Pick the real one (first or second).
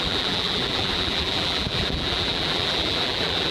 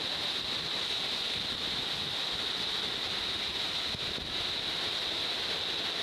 second